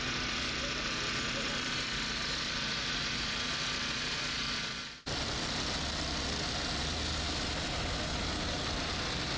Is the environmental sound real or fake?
real